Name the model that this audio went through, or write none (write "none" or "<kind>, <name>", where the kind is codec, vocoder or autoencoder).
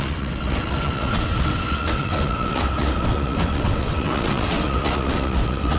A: vocoder, WaveNeXt